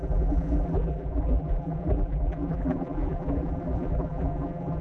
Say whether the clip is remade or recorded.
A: remade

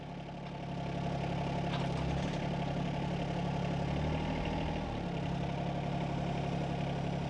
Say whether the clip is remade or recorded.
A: recorded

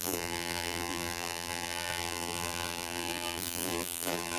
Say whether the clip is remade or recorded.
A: remade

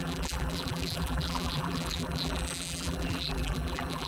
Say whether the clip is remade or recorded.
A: remade